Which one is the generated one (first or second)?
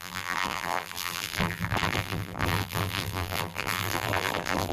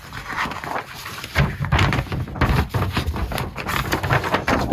first